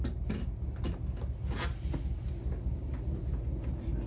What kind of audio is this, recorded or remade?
recorded